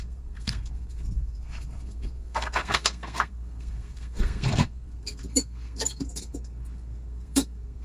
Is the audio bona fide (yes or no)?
no